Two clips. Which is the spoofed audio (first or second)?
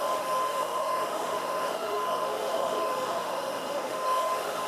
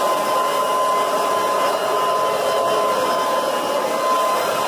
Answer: first